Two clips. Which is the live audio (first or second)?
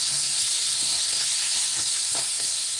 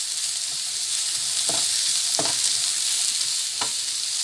second